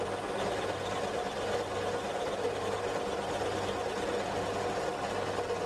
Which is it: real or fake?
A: real